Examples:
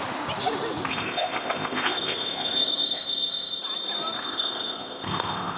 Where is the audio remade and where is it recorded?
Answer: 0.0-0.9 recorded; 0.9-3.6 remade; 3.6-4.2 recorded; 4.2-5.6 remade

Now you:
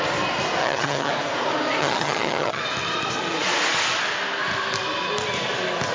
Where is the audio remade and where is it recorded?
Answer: 0.0-0.6 recorded; 0.6-1.1 remade; 1.1-1.8 recorded; 1.8-2.6 remade; 2.6-5.9 recorded

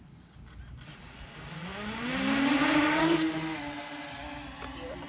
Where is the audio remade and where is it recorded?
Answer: 0.0-5.1 recorded

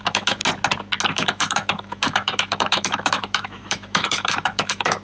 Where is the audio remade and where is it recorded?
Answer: 0.0-0.4 remade; 0.4-1.1 recorded; 1.1-5.0 remade

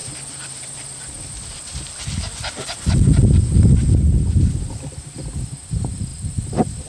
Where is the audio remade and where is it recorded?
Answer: 0.0-6.9 recorded

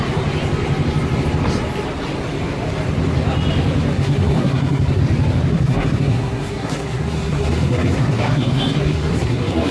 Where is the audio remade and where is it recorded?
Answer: 0.0-3.9 recorded; 3.9-5.0 remade; 5.0-5.5 recorded; 5.5-9.7 remade

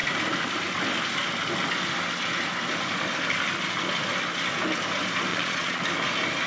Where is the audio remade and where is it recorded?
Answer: 0.0-5.3 recorded; 5.3-5.8 remade; 5.8-6.5 recorded